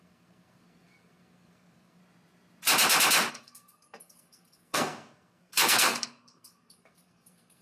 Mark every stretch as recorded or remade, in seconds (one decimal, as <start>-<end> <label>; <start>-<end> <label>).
0.0-2.0 remade; 2.0-3.3 recorded; 3.3-7.6 remade